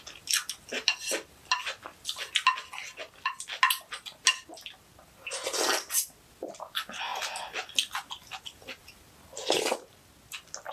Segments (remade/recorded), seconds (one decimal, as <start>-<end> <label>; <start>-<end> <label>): 0.0-7.1 recorded; 7.1-9.0 remade; 9.0-10.7 recorded